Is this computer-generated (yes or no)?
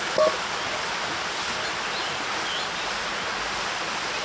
no